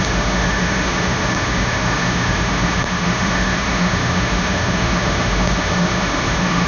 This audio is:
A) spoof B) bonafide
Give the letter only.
A